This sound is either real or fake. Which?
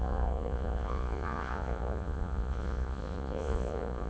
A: fake